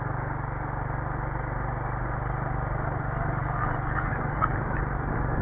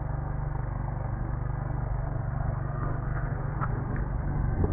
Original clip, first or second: first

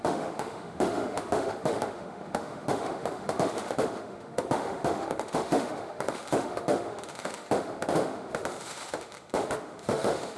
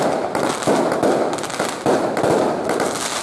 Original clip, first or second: second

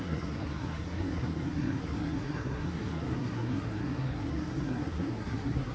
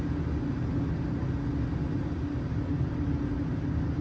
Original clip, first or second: second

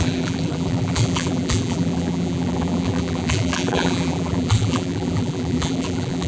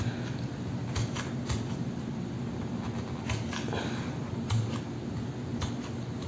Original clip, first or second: second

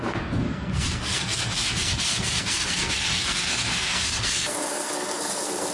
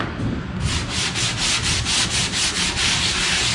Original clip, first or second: second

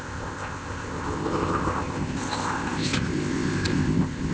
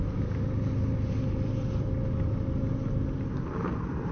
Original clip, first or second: second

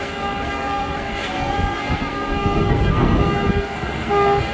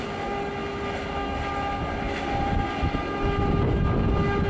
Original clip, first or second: second